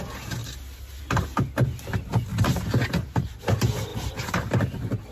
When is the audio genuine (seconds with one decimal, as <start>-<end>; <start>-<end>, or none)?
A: 0.0-2.3; 3.2-3.9; 4.5-5.1